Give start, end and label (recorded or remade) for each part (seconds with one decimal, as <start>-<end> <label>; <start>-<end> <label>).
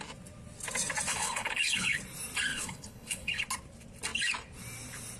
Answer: 0.0-1.1 recorded; 1.1-2.0 remade; 2.0-2.5 recorded; 2.5-3.4 remade; 3.4-5.2 recorded